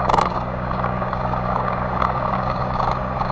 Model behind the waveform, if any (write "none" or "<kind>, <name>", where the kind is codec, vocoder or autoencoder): codec, DAC